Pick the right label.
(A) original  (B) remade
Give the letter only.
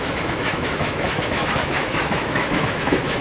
B